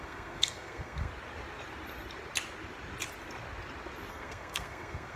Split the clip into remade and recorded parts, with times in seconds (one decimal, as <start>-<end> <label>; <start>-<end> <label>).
0.0-1.1 remade; 1.1-4.1 recorded; 4.1-5.2 remade